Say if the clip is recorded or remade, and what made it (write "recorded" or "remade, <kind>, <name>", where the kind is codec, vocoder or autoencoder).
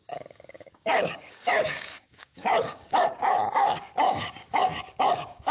remade, codec, DAC